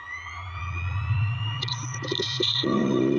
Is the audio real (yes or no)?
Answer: no